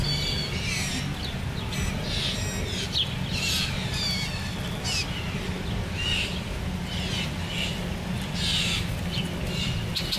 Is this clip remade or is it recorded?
recorded